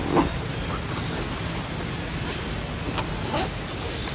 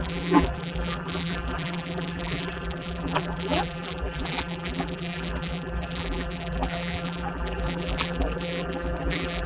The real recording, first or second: first